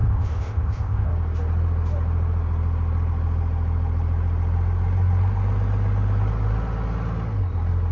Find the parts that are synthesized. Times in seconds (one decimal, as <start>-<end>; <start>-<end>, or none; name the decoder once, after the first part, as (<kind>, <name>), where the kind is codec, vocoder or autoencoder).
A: 0.0-1.1 (codec, ZipCodec)